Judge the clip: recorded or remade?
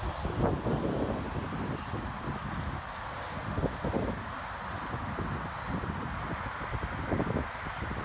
recorded